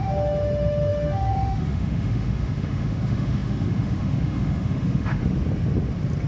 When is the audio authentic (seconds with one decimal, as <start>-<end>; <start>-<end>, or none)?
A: 5.2-6.3